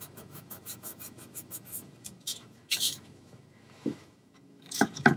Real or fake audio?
fake